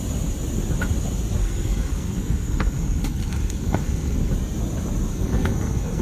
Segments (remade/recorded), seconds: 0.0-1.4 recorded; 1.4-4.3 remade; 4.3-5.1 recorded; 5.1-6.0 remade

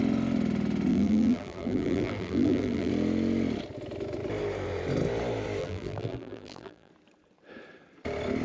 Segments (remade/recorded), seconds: 0.0-0.9 recorded; 0.9-2.9 remade; 2.9-5.6 recorded; 5.6-6.9 remade; 6.9-8.4 recorded

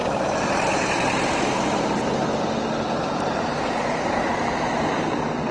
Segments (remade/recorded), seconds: 0.0-2.5 remade; 2.5-3.0 recorded; 3.0-4.3 remade; 4.3-5.5 recorded

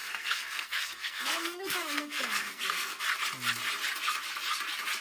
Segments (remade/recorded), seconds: 0.0-3.0 remade; 3.0-5.0 recorded

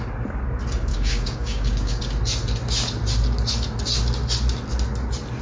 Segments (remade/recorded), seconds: 0.0-0.9 recorded; 0.9-2.0 remade; 2.0-5.4 recorded

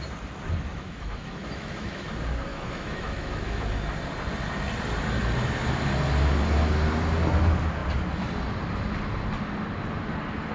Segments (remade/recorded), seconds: 0.0-0.7 recorded; 0.7-2.1 remade; 2.1-2.5 recorded; 2.5-3.6 remade; 3.6-10.5 recorded

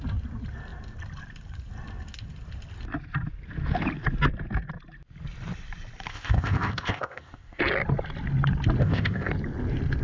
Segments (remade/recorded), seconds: 0.0-6.1 recorded; 6.1-7.6 remade; 7.6-8.8 recorded; 8.8-9.3 remade; 9.3-10.0 recorded